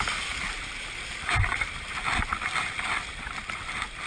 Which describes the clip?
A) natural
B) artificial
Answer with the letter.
A